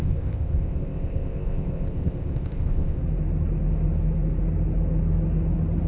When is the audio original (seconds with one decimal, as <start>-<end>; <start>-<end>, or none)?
3.0-5.9